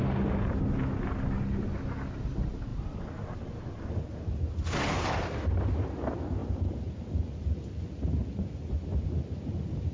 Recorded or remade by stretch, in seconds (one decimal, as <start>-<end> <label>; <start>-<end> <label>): 0.0-2.7 recorded; 2.7-4.0 remade; 4.0-9.9 recorded